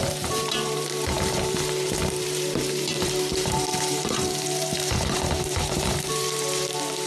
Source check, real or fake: fake